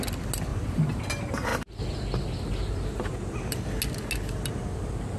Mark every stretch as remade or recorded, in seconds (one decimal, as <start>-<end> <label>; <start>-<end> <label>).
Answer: 0.0-0.5 recorded; 0.5-1.0 remade; 1.0-5.2 recorded